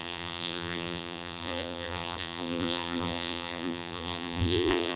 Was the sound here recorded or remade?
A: remade